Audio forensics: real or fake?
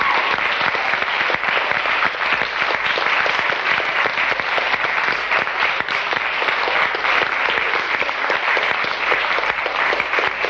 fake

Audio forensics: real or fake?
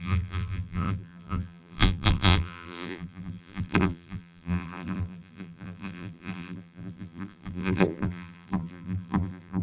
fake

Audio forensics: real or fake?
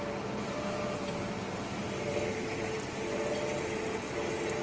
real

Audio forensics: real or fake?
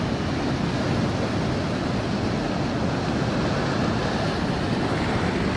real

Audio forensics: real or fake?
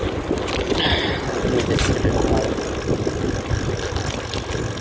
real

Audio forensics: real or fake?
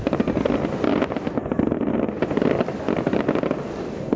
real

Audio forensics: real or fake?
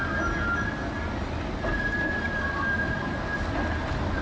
real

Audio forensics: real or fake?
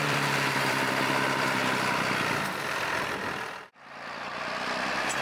fake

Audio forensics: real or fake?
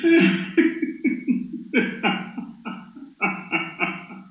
real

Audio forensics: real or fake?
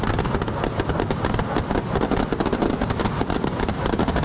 real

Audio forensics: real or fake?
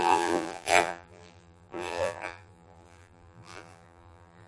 fake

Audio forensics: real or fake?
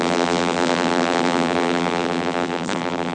fake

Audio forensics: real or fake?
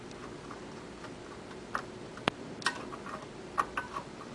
real